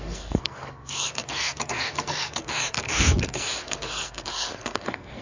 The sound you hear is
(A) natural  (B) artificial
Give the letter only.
B